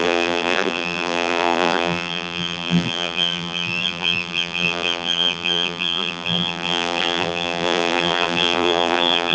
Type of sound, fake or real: fake